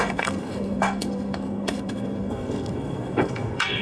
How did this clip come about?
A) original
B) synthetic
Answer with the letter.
B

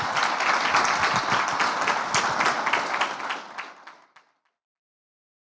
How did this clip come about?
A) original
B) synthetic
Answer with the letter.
A